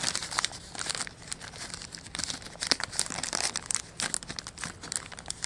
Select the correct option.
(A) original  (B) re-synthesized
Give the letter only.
A